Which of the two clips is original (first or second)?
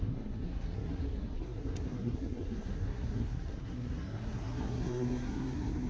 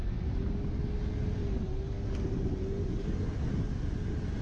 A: second